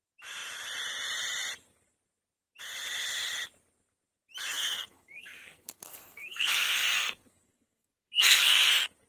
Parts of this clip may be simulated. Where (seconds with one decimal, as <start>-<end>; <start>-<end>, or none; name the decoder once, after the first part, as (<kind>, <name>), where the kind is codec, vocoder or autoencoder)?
4.9-8.7 (codec, SNAC)